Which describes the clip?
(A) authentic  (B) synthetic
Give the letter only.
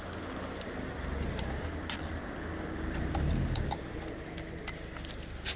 A